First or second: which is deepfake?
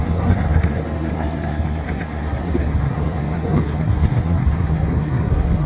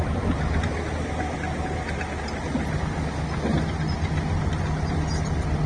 first